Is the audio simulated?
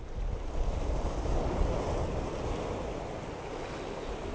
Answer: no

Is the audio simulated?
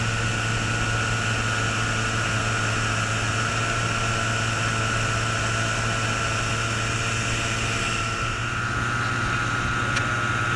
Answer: no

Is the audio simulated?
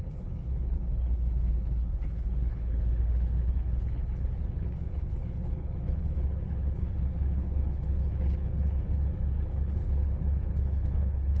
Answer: yes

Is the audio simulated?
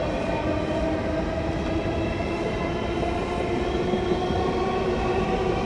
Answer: no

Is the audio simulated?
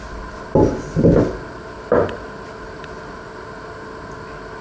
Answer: no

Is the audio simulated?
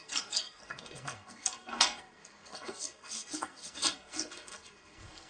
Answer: yes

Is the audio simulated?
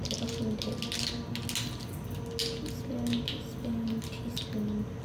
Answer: no